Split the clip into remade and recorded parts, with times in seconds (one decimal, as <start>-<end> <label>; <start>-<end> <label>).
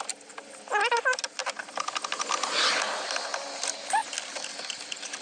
0.0-5.2 recorded